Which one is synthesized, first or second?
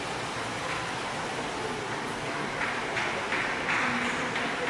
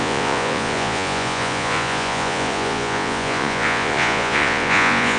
second